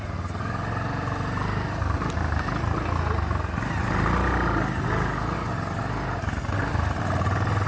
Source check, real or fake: real